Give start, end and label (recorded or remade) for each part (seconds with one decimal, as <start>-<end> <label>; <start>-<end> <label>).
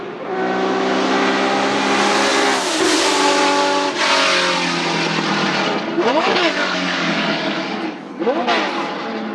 0.0-6.1 recorded; 6.1-8.1 remade; 8.1-9.3 recorded